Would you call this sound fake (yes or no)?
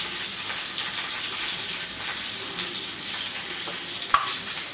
no